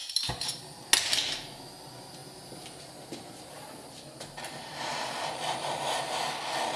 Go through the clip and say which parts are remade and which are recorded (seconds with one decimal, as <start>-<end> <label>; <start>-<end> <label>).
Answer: 0.0-0.5 remade; 0.5-2.2 recorded; 2.2-6.0 remade; 6.0-6.8 recorded